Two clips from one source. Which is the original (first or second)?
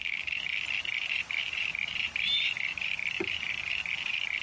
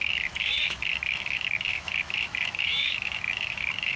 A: first